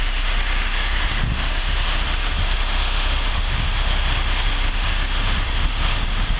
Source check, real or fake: fake